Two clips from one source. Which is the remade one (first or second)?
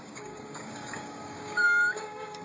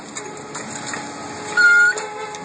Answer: first